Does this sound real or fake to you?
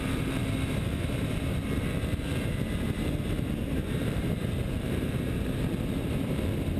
fake